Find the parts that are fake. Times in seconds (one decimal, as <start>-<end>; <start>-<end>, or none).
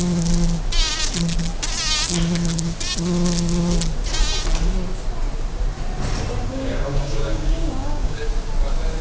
6.5-8.3